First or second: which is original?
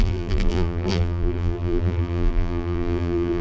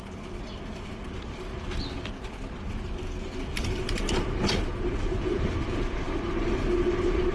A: second